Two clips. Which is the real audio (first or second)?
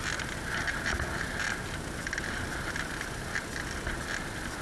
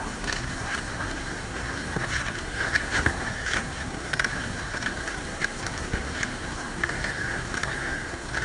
first